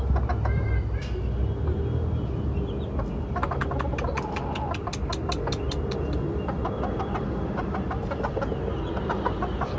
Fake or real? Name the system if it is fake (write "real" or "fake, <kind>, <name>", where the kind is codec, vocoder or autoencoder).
real